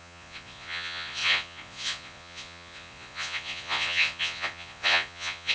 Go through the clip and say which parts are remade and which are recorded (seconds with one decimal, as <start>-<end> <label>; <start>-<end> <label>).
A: 0.0-5.5 remade